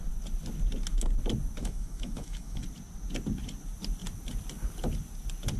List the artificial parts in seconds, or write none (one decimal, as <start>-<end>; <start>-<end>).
1.6-2.6